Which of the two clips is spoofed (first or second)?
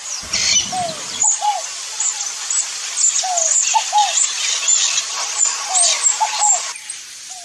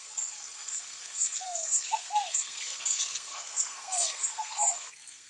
second